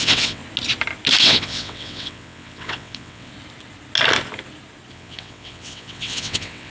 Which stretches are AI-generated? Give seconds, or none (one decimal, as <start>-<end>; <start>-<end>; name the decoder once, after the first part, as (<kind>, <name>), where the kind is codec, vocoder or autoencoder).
0.0-0.4 (vocoder, WaveNeXt); 1.2-3.3; 4.9-6.7